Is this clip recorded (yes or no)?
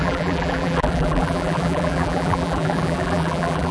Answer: no